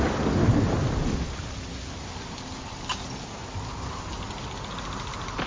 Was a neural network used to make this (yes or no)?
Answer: no